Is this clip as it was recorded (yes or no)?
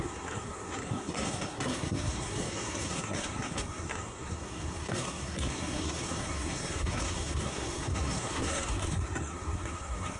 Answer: no